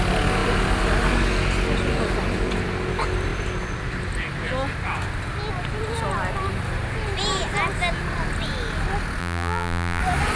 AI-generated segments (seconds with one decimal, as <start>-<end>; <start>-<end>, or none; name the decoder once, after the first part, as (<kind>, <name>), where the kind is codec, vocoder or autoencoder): 9.2-10.0 (vocoder, BigVGAN v2)